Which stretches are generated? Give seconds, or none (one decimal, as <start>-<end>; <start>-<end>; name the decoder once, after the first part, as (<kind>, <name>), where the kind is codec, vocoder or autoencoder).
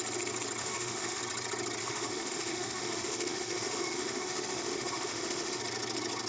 0.6-1.2 (autoencoder, DAC-VAE); 1.8-5.6